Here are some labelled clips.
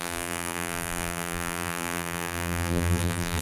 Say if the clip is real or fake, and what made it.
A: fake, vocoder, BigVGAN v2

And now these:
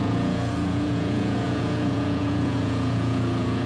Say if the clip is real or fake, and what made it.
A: fake, vocoder, Vocos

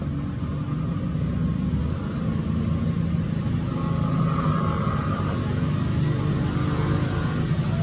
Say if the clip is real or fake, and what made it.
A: real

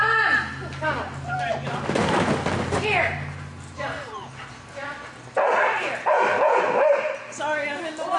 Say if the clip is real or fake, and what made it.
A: real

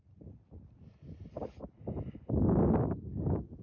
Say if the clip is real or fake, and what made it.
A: real